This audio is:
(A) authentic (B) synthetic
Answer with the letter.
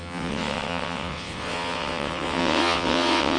B